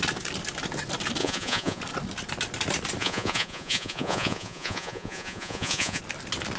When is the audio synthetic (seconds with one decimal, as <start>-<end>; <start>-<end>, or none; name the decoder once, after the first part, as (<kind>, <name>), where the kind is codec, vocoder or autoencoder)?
1.2-1.8 (vocoder, Vocos); 3.0-6.0